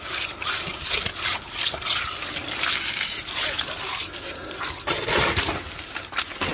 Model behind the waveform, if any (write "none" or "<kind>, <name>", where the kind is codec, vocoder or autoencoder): none